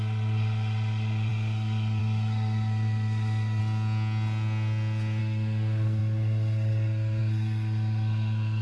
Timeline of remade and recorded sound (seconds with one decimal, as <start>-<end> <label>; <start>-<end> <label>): 0.0-3.6 remade; 3.6-5.2 recorded; 5.2-8.6 remade